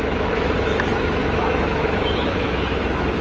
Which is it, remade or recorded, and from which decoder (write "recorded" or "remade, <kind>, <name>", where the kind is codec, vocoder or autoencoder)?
remade, autoencoder, DAC-VAE